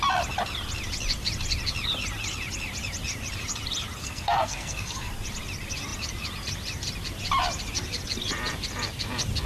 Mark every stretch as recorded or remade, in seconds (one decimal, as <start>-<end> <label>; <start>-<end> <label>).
0.0-4.0 recorded; 4.0-5.1 remade; 5.1-9.5 recorded